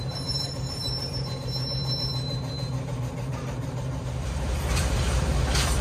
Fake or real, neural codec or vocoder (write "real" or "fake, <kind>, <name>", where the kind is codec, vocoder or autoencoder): fake, vocoder, BigVGAN v2